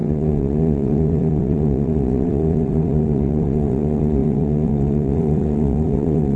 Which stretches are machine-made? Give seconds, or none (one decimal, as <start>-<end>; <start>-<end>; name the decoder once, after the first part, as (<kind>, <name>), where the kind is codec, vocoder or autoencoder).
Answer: 0.0-6.4 (vocoder, WaveNeXt)